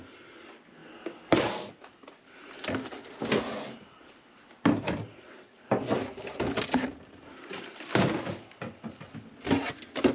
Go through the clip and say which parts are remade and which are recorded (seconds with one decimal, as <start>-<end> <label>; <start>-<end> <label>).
0.0-10.1 recorded